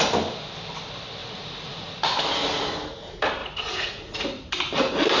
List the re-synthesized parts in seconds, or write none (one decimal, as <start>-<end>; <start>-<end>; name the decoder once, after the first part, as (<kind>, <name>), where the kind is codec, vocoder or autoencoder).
1.2-2.0 (vocoder, Vocos); 3.4-4.5